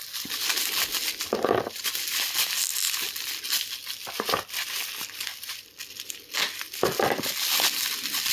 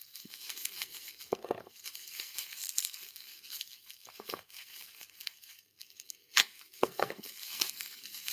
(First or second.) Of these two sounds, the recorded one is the first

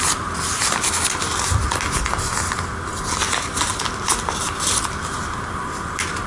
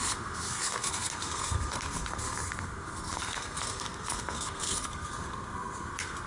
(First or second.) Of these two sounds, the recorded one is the first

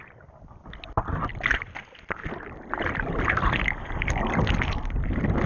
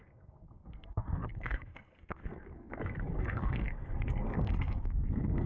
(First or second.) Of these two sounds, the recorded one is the first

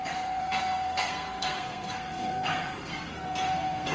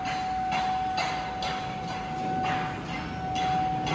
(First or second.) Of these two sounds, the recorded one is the second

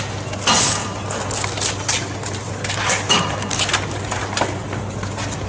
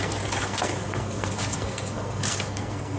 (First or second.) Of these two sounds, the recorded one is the first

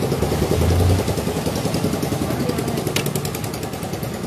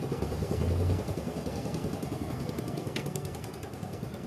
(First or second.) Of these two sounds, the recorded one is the first